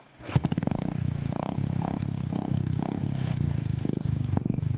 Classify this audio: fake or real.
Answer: fake